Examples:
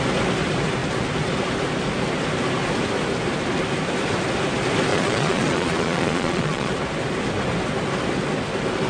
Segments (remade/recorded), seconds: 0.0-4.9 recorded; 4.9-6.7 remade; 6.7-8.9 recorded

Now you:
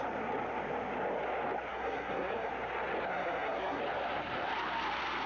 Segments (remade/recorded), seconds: 0.0-1.7 recorded; 1.7-2.5 remade; 2.5-3.1 recorded; 3.1-3.8 remade; 3.8-5.3 recorded

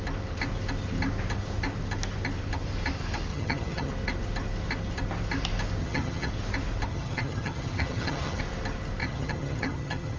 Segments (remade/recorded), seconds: 0.0-3.3 recorded; 3.3-3.9 remade; 3.9-5.8 recorded; 5.8-6.3 remade; 6.3-6.9 recorded; 6.9-8.4 remade; 8.4-9.0 recorded; 9.0-10.2 remade